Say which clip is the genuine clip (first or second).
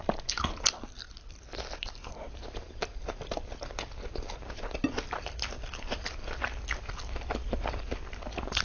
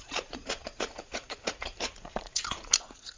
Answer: first